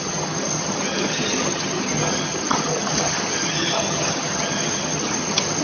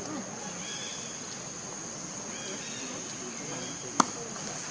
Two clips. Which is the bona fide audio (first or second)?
second